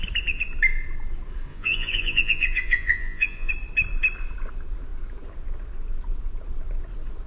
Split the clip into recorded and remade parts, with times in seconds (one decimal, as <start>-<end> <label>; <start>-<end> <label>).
0.0-1.5 recorded; 1.5-3.5 remade; 3.5-7.3 recorded